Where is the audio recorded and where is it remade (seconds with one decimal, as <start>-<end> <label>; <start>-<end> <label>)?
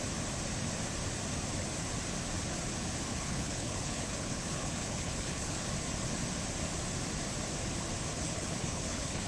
0.0-3.1 recorded; 3.1-5.6 remade; 5.6-8.1 recorded; 8.1-9.3 remade